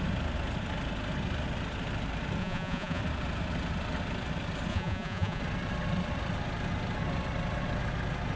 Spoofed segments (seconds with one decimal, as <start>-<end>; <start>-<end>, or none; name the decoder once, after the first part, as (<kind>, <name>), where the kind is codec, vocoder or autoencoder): 2.4-3.0 (vocoder, Vocos); 4.7-5.4